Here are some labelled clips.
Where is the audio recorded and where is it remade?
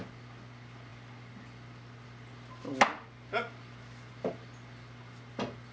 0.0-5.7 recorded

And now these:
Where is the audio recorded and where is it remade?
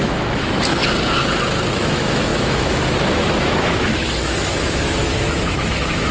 0.0-0.8 remade; 0.8-1.7 recorded; 1.7-6.1 remade